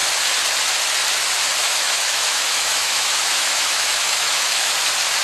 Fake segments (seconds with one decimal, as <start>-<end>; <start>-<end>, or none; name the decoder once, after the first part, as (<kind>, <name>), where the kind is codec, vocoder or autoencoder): 1.6-4.7 (autoencoder, DAC-VAE)